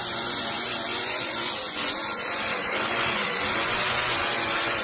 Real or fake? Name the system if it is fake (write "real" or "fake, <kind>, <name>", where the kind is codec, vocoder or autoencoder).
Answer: fake, vocoder, Vocos